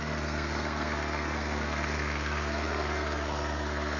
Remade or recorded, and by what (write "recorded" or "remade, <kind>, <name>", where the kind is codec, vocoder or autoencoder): remade, codec, SNAC